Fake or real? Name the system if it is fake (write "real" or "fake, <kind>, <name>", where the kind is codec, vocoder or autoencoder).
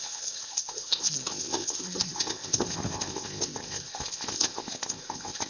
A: fake, codec, ZipCodec